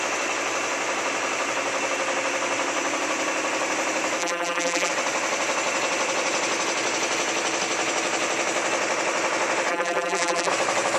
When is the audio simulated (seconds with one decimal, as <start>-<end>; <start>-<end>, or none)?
4.2-4.9; 9.7-10.5